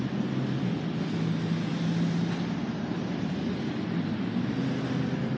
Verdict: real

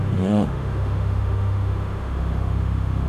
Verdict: fake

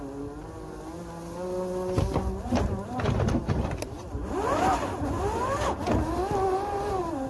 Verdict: real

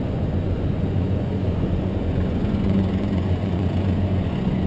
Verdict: fake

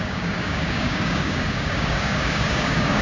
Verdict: fake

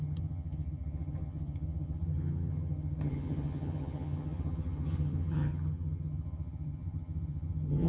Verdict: fake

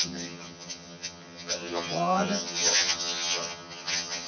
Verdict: fake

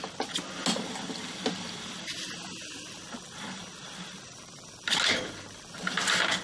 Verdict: real